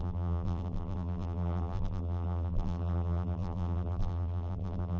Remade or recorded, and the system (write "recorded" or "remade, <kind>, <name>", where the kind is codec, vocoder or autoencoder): remade, vocoder, BigVGAN v2